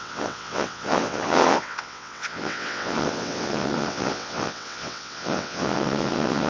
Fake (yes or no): yes